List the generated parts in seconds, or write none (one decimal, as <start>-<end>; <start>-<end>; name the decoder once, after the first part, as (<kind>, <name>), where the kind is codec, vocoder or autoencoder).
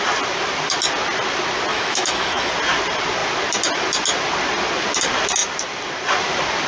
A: 1.7-2.5 (autoencoder, DAC-VAE)